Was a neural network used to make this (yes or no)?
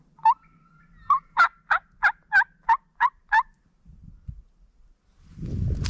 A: no